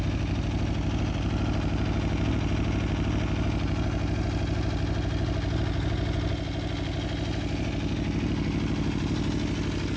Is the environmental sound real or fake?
real